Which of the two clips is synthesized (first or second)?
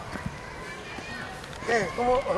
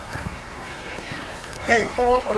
second